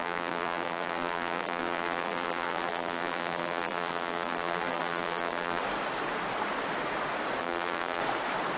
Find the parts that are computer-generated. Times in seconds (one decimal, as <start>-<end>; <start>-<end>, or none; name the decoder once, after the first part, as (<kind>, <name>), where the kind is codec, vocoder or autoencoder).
0.0-5.6 (vocoder, BigVGAN v2); 7.4-8.0